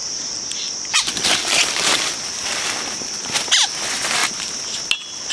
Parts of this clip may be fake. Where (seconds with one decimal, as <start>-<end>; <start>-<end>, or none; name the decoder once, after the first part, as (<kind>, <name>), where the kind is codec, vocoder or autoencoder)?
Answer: 0.0-3.2 (vocoder, BigVGAN v2)